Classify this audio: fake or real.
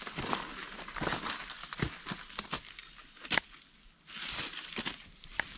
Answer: real